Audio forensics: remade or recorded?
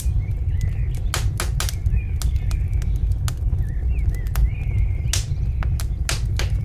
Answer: recorded